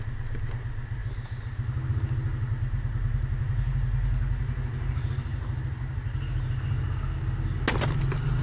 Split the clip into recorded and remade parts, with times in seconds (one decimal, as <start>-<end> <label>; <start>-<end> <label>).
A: 0.0-8.4 recorded